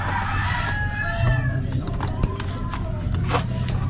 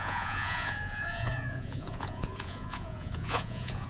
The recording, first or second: first